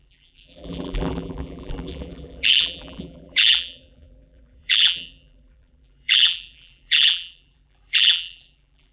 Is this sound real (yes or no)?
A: no